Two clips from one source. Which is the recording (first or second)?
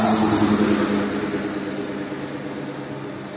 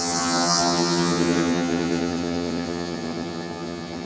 first